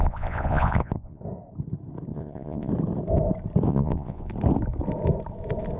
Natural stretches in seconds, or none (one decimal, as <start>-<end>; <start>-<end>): 1.2-2.1; 2.7-3.7; 4.3-5.8